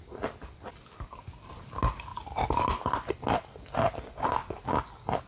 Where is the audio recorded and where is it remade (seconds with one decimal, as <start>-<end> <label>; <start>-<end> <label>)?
0.0-5.3 recorded